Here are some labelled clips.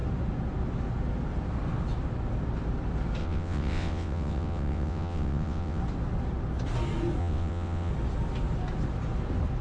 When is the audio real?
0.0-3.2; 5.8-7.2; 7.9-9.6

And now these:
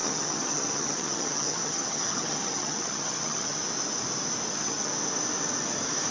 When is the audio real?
3.6-4.5; 4.9-6.1

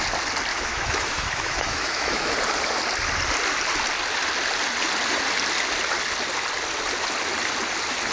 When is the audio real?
0.0-0.5; 2.3-8.1

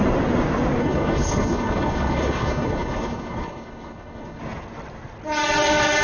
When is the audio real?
0.0-0.8; 4.4-6.0

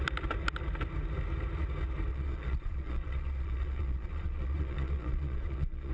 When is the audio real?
0.0-2.1

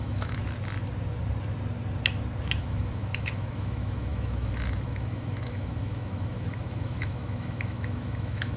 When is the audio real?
0.4-2.6

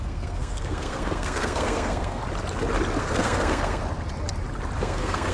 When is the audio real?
2.2-3.0; 3.8-4.8